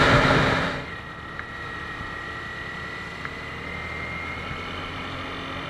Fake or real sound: real